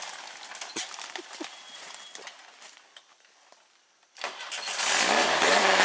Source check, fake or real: real